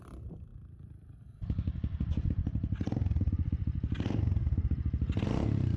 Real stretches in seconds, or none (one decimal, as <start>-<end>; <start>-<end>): 0.0-5.8